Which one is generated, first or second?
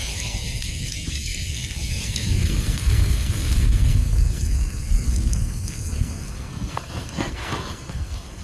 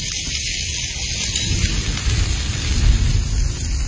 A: first